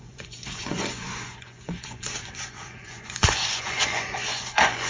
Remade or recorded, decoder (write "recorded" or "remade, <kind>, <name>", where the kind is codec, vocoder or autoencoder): remade, vocoder, Vocos